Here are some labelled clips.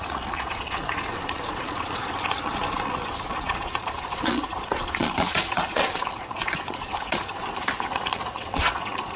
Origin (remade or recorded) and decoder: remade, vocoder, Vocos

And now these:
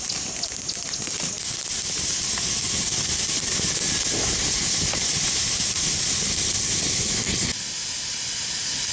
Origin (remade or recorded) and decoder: recorded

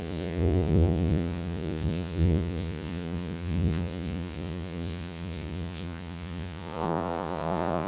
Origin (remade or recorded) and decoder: remade, vocoder, Vocos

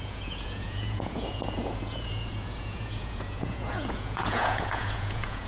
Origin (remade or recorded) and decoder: remade, vocoder, Vocos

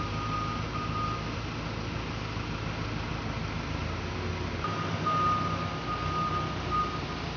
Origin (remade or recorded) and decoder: recorded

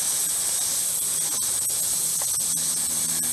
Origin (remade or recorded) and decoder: recorded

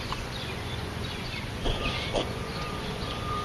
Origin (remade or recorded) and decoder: remade, vocoder, Vocos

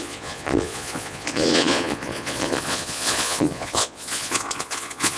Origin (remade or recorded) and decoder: remade, vocoder, Vocos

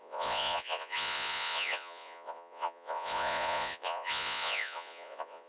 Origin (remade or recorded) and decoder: remade, vocoder, Vocos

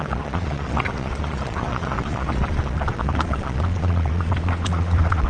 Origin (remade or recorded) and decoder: remade, vocoder, Vocos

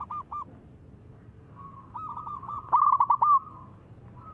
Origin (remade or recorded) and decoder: recorded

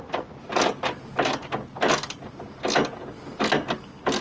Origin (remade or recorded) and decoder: recorded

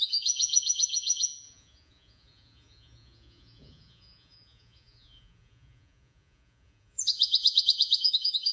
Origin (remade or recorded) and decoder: remade, vocoder, Vocos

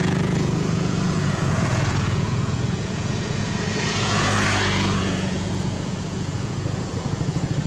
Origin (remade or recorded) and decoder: remade, vocoder, Vocos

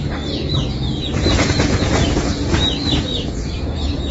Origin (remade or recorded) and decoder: remade, vocoder, Vocos